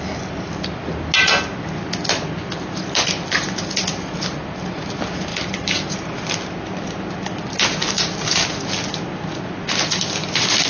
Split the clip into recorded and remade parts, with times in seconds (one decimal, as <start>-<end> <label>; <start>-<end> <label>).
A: 0.0-10.7 recorded